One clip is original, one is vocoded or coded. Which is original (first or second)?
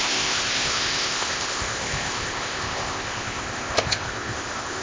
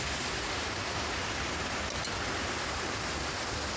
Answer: second